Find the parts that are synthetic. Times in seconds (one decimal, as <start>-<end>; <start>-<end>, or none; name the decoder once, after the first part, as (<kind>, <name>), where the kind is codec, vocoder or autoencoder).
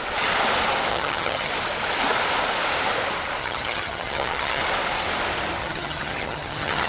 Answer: 0.9-1.5 (vocoder, HiFi-GAN); 3.4-4.6; 5.6-6.9